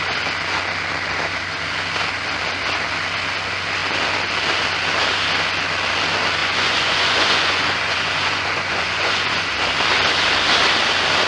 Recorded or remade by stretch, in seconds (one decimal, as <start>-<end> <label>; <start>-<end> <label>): 0.0-6.4 recorded; 6.4-9.5 remade; 9.5-11.3 recorded